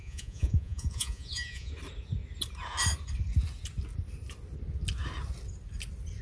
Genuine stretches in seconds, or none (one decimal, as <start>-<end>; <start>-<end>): 1.7-6.2

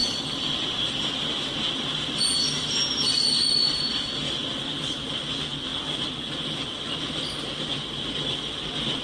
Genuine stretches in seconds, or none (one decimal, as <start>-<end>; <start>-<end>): 0.0-9.0

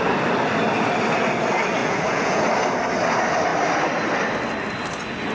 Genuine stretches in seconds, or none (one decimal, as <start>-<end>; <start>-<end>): 0.0-1.8; 2.4-5.3

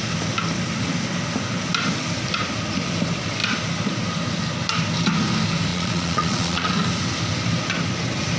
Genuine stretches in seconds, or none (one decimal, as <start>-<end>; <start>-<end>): 0.0-5.7; 6.7-8.4